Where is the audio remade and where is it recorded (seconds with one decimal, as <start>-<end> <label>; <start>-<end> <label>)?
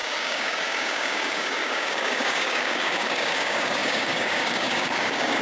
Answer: 0.0-5.4 remade